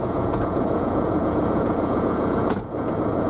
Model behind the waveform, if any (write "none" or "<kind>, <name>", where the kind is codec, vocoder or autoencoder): vocoder, Vocos